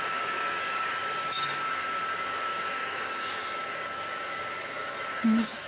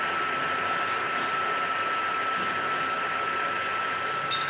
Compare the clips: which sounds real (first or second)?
second